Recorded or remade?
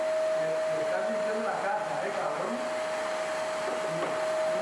recorded